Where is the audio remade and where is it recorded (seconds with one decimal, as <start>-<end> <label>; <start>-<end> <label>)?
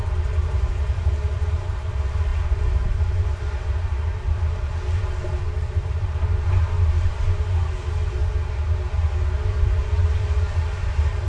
0.0-8.2 remade; 8.2-9.5 recorded; 9.5-11.3 remade